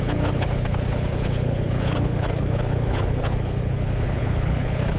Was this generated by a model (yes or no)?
yes